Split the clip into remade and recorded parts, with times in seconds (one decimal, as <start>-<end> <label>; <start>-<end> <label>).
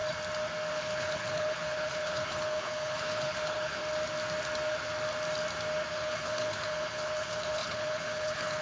0.0-0.7 recorded; 0.7-3.8 remade; 3.8-5.9 recorded; 5.9-8.6 remade